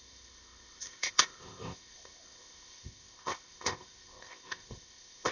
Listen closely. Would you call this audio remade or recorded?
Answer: remade